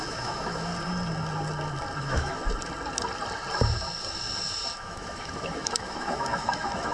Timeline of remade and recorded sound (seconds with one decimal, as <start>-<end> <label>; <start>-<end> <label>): 0.0-0.7 remade; 0.7-2.0 recorded; 2.0-2.4 remade; 2.4-4.8 recorded; 4.8-6.9 remade